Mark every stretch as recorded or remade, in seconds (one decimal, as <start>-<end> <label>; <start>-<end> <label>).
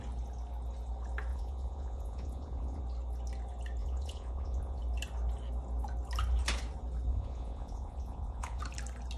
0.0-1.3 recorded; 1.3-2.8 remade; 2.8-3.8 recorded; 3.8-4.8 remade; 4.8-7.1 recorded; 7.1-8.6 remade; 8.6-9.2 recorded